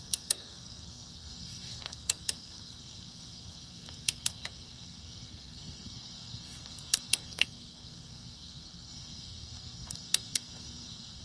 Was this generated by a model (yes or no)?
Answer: yes